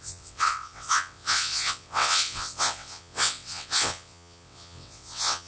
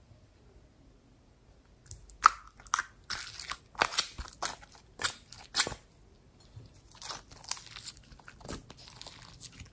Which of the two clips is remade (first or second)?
first